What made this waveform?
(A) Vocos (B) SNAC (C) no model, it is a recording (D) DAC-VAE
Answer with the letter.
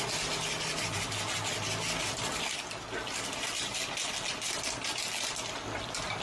C